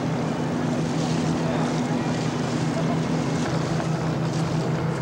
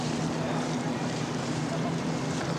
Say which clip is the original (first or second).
first